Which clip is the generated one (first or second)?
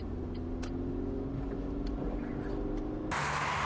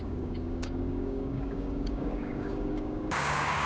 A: second